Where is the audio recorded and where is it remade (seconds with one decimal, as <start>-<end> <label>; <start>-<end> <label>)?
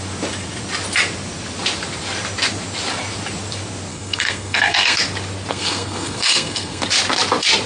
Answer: 0.0-3.9 recorded; 3.9-5.0 remade; 5.0-5.5 recorded; 5.5-6.8 remade; 6.8-7.7 recorded